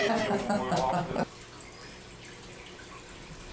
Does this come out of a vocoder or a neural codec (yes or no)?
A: no